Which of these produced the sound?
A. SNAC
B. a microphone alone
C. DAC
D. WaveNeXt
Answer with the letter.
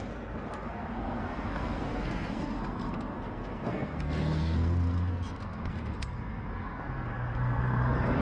A